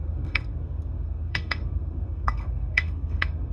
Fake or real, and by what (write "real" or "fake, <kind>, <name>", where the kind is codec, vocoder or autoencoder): fake, codec, SNAC